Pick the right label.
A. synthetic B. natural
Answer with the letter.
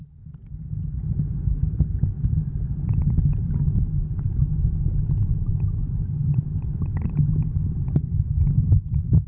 B